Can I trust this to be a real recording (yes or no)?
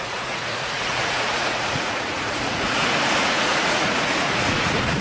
no